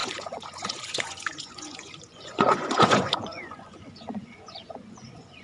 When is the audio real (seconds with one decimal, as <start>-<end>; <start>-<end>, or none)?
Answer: none